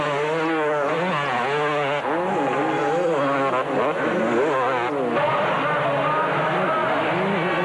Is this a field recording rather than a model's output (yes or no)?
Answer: yes